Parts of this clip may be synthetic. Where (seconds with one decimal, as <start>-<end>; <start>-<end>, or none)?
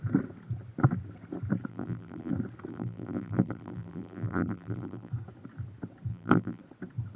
1.7-2.3; 2.7-5.1; 6.1-6.6